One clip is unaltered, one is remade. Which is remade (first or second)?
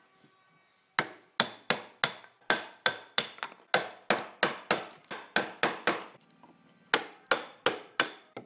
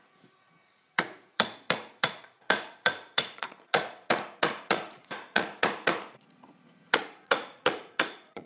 second